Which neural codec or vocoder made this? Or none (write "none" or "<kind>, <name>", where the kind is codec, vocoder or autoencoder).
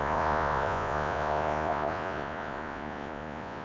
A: vocoder, Vocos